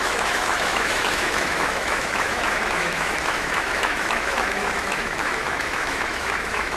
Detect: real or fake fake